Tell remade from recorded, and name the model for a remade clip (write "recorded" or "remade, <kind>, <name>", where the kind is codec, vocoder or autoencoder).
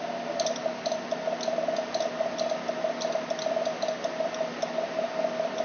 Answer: recorded